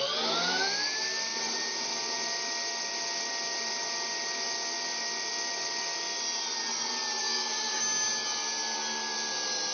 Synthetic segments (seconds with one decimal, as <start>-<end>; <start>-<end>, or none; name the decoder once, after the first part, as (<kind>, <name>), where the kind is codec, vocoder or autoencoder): 7.2-7.8 (codec, DAC)